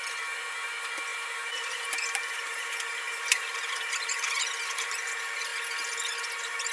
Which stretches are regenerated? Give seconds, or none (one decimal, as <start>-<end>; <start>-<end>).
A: 1.1-5.1